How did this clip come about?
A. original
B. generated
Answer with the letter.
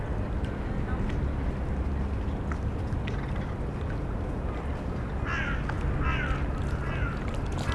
A